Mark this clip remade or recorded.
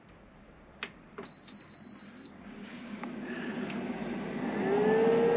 recorded